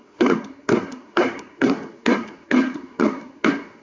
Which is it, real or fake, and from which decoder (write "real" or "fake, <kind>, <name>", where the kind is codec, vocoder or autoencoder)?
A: fake, codec, SNAC